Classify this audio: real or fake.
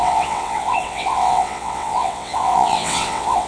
fake